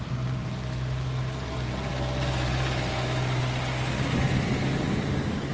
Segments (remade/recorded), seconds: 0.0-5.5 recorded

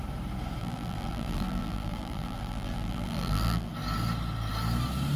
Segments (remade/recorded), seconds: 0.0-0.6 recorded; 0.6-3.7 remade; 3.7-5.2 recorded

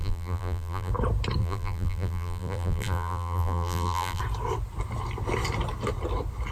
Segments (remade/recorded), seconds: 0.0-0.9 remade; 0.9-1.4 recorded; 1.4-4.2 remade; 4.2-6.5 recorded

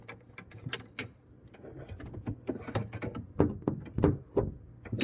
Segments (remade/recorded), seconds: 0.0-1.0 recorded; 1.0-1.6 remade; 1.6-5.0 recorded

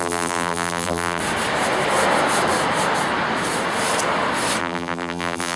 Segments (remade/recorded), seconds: 0.0-1.2 remade; 1.2-4.6 recorded; 4.6-5.6 remade